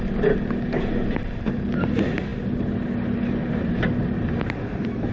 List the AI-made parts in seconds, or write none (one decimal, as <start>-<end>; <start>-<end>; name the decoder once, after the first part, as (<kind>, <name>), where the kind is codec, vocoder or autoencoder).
none